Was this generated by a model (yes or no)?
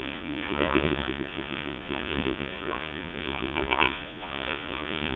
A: yes